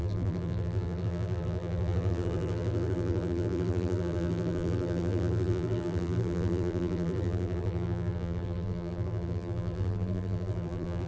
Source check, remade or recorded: remade